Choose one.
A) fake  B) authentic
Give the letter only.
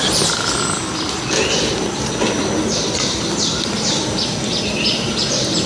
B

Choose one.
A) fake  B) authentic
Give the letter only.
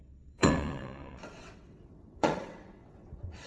A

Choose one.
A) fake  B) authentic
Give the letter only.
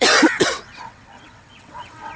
A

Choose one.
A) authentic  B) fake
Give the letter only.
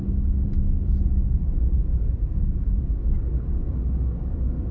A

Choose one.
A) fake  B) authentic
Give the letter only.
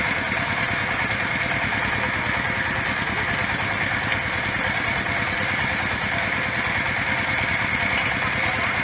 B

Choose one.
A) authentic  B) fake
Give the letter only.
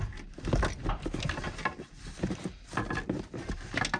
A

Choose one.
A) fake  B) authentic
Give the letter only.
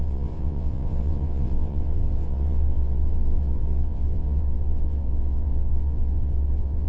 A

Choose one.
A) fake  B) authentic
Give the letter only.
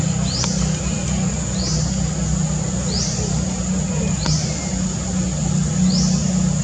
B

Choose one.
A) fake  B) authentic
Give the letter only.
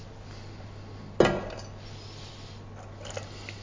B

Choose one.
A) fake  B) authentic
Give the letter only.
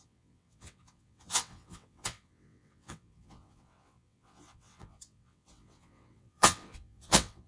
A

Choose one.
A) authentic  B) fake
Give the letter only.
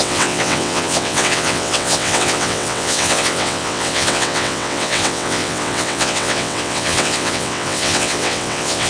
B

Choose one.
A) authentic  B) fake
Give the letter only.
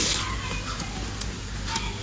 A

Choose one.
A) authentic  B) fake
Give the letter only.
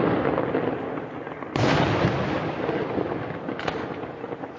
A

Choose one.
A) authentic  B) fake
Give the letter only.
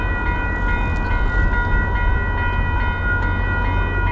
A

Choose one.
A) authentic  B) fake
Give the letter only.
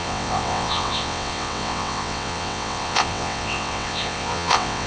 B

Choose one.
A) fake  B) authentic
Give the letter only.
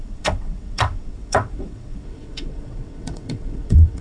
A